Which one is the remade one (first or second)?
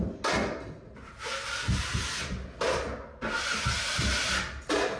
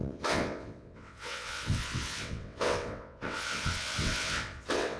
second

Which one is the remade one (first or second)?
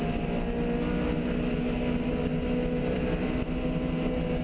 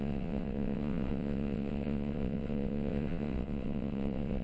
second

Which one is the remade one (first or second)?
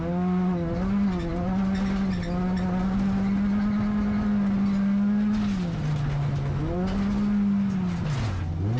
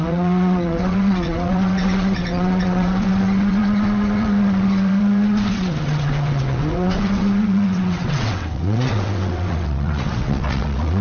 second